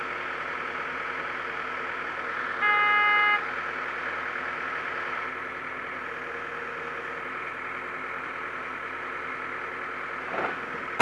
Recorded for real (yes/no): yes